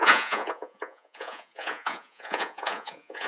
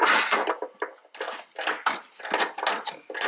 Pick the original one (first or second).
second